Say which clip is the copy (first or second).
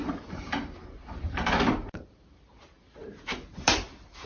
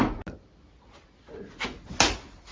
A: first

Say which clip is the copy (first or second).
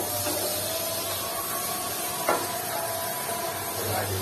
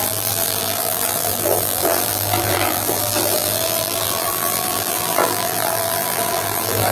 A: second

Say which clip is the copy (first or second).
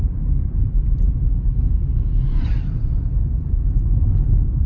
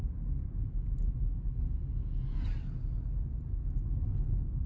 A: first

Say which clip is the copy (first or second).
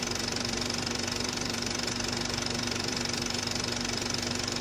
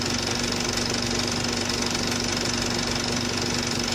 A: first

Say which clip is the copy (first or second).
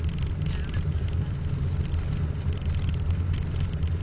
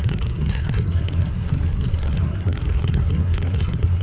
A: second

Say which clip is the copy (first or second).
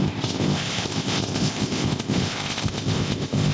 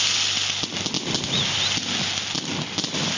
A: first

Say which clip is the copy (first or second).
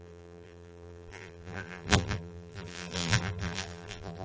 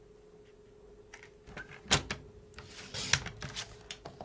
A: first